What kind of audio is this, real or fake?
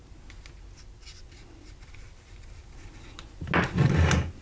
real